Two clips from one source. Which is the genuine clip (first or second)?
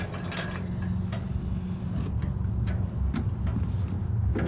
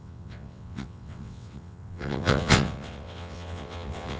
first